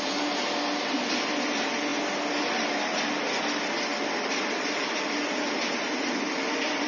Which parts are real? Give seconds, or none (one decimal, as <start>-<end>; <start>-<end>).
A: 0.0-6.9